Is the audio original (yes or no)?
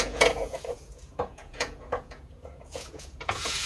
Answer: no